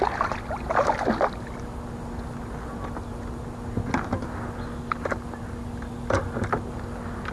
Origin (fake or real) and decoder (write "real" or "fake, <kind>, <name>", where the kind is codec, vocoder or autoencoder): real